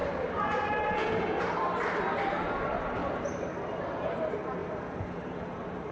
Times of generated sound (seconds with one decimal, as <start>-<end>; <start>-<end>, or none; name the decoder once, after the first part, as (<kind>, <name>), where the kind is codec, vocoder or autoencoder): 0.0-3.0 (vocoder, BigVGAN v2); 3.8-5.9